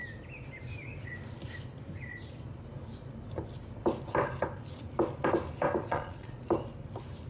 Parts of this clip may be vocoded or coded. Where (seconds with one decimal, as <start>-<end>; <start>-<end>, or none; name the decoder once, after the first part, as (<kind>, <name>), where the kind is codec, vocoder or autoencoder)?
5.8-6.4 (vocoder, Vocos)